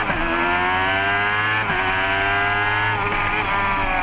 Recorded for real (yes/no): yes